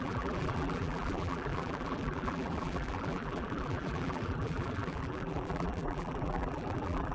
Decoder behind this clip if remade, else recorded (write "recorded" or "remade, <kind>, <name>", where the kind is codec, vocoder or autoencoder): remade, vocoder, BigVGAN v2